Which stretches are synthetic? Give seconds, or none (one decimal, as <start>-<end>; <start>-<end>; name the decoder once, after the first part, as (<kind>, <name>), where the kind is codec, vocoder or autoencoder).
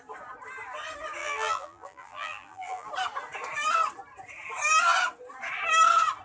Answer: 1.2-2.9 (vocoder, BigVGAN v2)